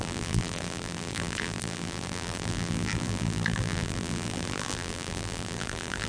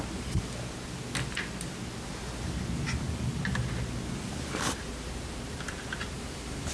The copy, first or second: first